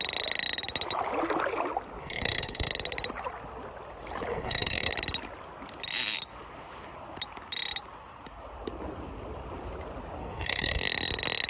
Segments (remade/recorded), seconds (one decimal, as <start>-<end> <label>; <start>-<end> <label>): 0.0-2.0 recorded; 2.0-2.7 remade; 2.7-4.3 recorded; 4.3-4.9 remade; 4.9-10.2 recorded; 10.2-10.8 remade; 10.8-11.5 recorded